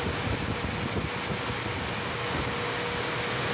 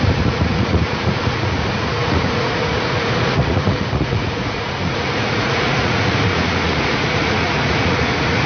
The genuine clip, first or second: first